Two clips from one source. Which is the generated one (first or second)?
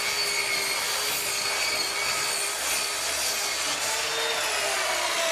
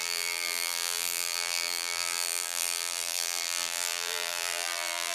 second